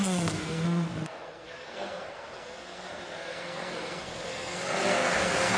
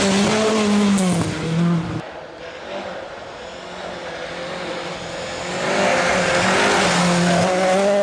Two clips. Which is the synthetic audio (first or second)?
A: first